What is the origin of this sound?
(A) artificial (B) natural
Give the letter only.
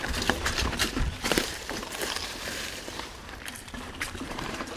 A